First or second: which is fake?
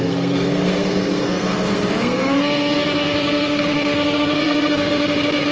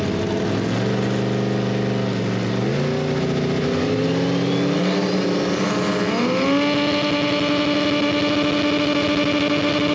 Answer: first